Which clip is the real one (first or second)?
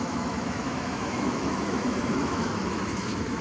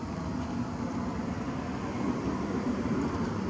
second